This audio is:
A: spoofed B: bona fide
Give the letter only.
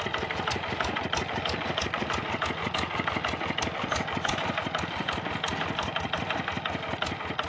A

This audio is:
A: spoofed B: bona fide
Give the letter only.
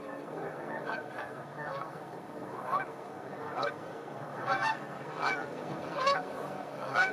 A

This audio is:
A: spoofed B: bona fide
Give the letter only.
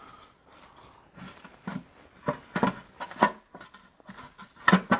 B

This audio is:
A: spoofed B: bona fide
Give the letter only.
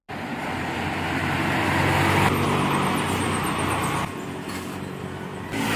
B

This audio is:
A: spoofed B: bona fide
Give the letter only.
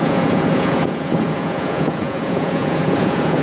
A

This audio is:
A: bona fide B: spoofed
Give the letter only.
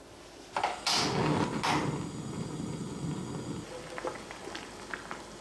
A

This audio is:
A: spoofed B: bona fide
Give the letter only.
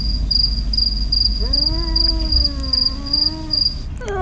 B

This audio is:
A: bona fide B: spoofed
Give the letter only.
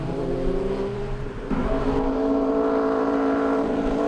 B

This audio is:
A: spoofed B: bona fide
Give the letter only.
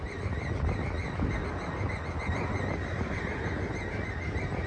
B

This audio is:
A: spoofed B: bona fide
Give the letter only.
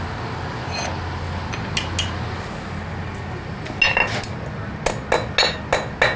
B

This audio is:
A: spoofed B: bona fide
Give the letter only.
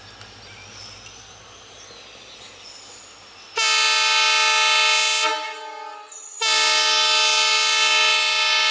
B